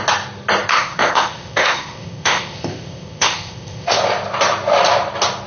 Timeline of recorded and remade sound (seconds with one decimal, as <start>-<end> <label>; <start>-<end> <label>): 0.0-0.7 recorded; 0.7-4.0 remade; 4.0-5.5 recorded